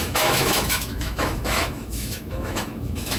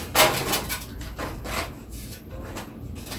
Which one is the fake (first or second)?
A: first